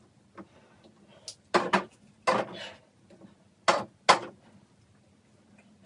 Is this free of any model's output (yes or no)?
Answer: yes